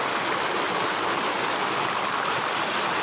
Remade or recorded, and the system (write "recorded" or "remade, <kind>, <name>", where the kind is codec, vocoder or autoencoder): recorded